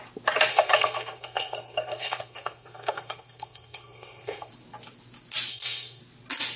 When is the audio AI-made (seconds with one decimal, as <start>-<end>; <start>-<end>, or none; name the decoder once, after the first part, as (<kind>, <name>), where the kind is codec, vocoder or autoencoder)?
0.5-4.5 (codec, SNAC); 5.5-6.0